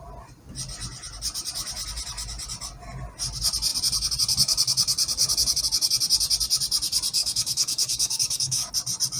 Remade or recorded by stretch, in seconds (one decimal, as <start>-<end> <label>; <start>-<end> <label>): 0.0-7.2 recorded; 7.2-8.7 remade; 8.7-9.2 recorded